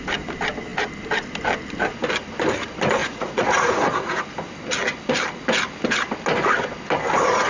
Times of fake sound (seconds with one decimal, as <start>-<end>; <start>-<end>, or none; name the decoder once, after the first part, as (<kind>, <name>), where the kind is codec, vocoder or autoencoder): 3.0-4.2 (vocoder, Vocos)